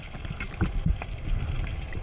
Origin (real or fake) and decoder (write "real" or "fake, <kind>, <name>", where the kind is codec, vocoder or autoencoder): fake, vocoder, BigVGAN v2